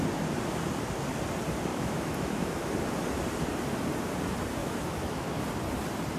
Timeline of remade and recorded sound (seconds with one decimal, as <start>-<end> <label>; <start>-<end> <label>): 0.0-1.7 recorded; 1.7-2.7 remade; 2.7-4.6 recorded; 4.6-5.4 remade; 5.4-6.2 recorded